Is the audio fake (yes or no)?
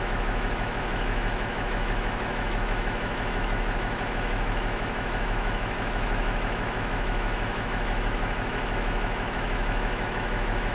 yes